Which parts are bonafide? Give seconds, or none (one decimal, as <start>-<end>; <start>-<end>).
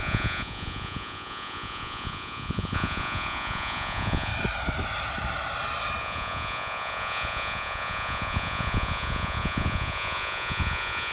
4.3-6.0